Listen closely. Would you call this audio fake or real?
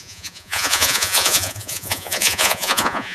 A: fake